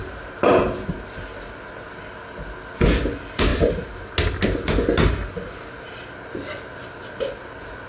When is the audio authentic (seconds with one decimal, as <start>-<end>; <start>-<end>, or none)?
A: 0.5-7.9